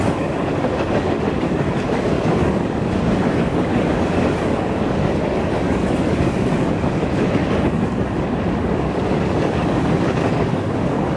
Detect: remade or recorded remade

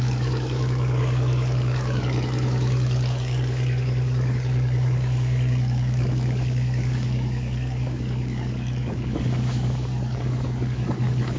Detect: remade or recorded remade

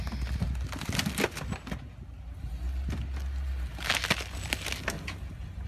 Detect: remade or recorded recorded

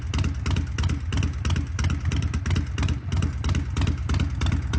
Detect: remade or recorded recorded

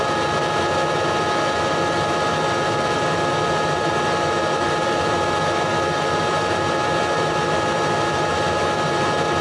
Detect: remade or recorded recorded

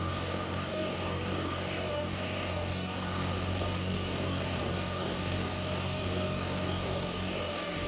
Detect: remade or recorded remade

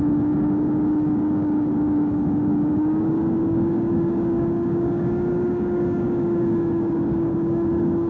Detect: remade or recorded remade